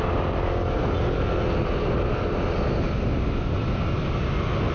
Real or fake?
real